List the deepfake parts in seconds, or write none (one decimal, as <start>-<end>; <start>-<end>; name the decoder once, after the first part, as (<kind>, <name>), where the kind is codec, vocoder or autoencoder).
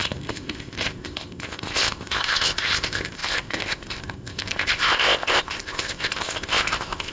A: 0.0-7.1 (codec, ZipCodec)